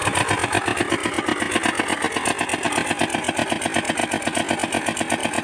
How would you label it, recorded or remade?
recorded